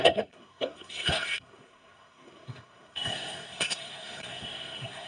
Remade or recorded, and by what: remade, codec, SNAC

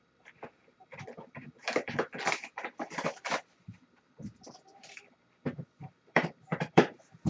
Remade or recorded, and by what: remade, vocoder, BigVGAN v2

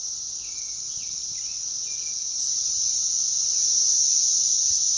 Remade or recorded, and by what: recorded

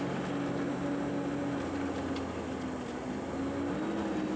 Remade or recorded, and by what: recorded